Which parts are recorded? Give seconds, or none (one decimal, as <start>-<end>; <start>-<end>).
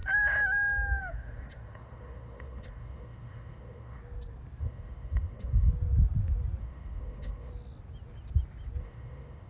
0.0-1.0; 4.0-4.6; 5.7-6.6; 7.5-8.8